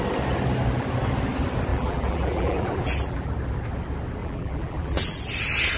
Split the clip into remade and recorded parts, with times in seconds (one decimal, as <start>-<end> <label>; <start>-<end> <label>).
0.0-1.7 recorded; 1.7-3.3 remade; 3.3-4.2 recorded; 4.2-5.2 remade; 5.2-5.8 recorded